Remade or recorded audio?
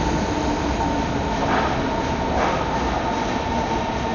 recorded